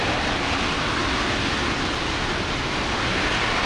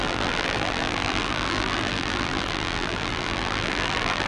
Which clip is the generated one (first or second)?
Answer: second